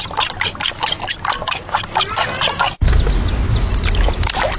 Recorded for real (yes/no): yes